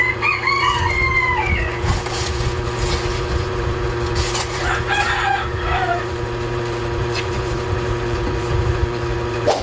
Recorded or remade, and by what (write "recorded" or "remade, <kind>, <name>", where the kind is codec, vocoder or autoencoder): remade, vocoder, Vocos